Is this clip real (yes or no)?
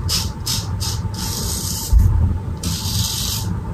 no